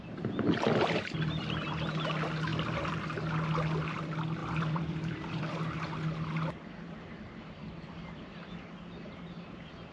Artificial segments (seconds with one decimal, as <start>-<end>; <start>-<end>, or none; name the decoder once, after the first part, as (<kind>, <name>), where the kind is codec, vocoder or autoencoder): 4.4-5.4 (vocoder, BigVGAN v2)